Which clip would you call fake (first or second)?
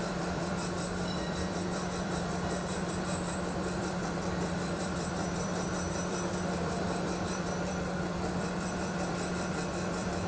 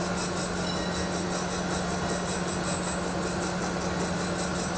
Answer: first